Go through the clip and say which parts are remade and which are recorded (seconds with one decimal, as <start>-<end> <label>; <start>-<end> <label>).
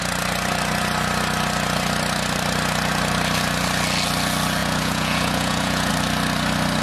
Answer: 0.0-4.6 recorded; 4.6-5.9 remade; 5.9-6.8 recorded